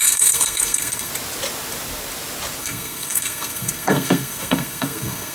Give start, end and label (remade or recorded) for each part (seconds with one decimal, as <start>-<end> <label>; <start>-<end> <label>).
0.0-1.1 remade; 1.1-2.6 recorded; 2.6-5.3 remade